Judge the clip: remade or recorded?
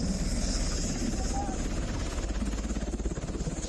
recorded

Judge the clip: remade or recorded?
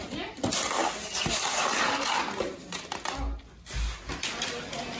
recorded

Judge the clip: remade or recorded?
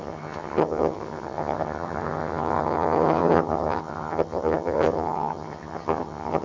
remade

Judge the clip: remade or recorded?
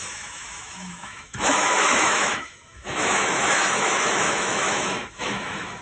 remade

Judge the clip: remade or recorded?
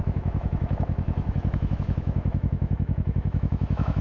remade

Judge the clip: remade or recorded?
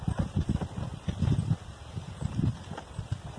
recorded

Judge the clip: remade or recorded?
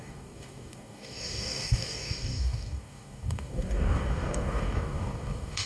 remade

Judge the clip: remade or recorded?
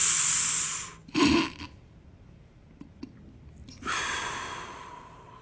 recorded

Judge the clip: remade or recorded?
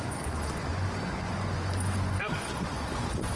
remade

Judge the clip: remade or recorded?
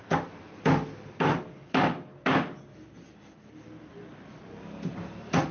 recorded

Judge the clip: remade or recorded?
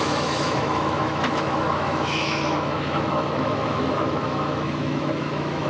remade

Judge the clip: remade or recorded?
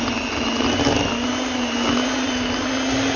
recorded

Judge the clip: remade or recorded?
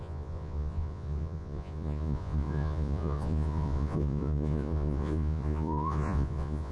remade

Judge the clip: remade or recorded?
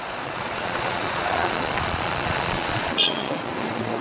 remade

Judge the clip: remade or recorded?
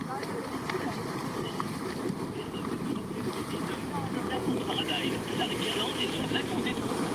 remade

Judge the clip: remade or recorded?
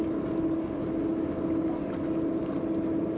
recorded